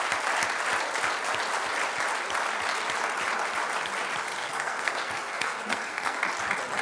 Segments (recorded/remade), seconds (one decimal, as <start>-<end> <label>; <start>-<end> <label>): 0.0-4.3 recorded; 4.3-6.2 remade; 6.2-6.8 recorded